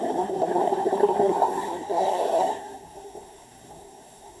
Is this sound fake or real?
fake